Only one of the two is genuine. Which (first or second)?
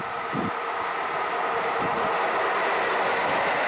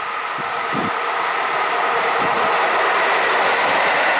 first